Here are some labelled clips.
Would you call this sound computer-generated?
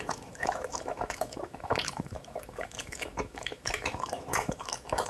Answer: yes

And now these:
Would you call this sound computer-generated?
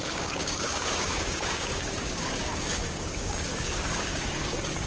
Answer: yes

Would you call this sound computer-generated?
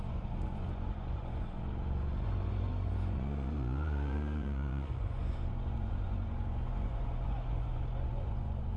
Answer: yes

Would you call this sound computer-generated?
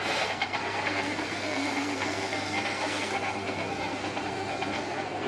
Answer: yes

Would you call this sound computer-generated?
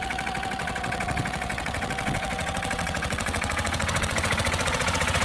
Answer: yes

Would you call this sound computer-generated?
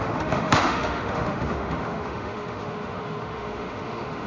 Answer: yes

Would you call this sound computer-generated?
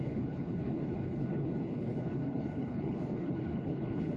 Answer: yes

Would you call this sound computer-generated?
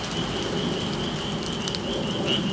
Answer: no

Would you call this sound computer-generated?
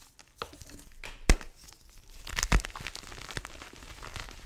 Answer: no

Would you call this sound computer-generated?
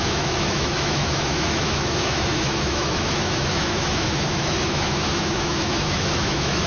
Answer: yes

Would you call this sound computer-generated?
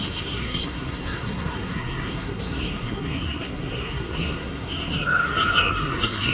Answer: yes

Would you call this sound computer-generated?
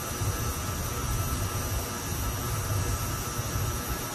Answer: no